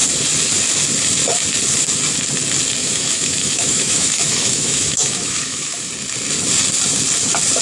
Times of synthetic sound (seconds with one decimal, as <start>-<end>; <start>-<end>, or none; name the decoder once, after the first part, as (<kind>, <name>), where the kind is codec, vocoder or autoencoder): 2.8-5.9 (autoencoder, DAC-VAE)